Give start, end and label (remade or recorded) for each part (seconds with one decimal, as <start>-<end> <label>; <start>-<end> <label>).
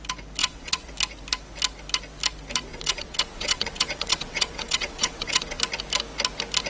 0.0-0.4 recorded; 0.4-0.9 remade; 0.9-2.7 recorded; 2.7-5.6 remade; 5.6-6.7 recorded